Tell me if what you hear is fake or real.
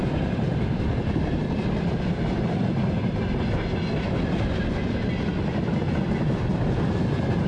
real